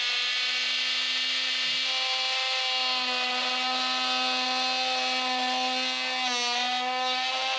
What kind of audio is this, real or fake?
real